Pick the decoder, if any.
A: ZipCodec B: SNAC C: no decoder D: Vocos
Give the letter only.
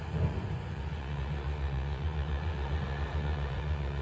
D